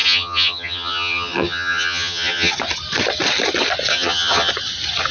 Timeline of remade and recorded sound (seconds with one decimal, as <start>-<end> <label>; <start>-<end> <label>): 0.0-2.5 remade; 2.5-3.9 recorded; 3.9-4.5 remade; 4.5-5.1 recorded